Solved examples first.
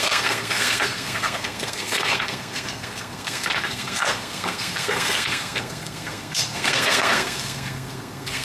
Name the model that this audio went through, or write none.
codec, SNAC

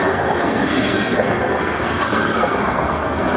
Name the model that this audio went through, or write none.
codec, SNAC